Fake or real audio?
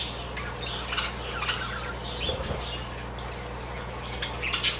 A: real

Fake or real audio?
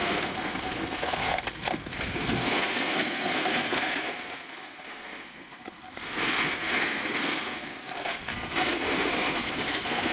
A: fake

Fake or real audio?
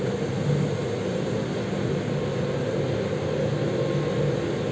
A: real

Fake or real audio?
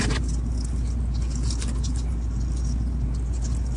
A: real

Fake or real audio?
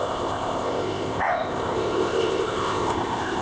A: fake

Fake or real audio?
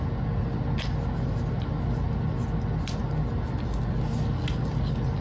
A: real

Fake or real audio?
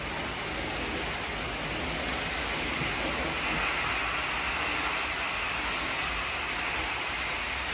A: real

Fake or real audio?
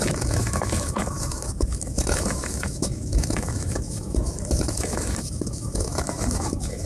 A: fake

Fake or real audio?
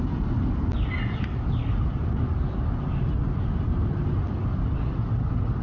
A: real